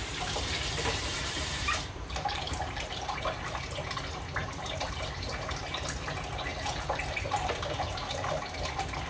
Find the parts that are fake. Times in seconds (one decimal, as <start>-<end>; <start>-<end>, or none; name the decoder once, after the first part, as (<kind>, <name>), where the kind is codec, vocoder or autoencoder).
0.0-3.6 (vocoder, BigVGAN v2); 4.4-5.6; 6.5-8.3